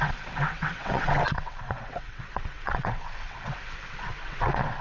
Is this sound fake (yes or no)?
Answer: yes